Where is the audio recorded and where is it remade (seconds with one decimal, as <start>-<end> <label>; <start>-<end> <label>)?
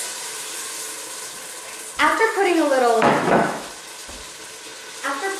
0.0-2.2 recorded; 2.2-3.7 remade; 3.7-5.4 recorded